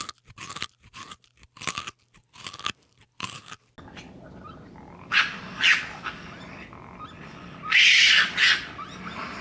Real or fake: real